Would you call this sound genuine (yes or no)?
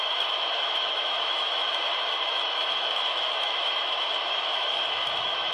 no